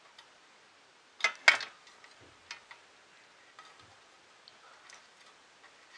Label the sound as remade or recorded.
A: recorded